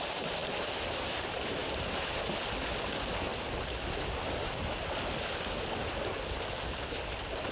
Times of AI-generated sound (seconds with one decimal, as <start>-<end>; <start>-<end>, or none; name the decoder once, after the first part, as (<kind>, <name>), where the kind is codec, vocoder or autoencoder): none